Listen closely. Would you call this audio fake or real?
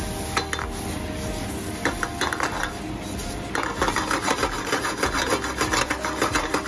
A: real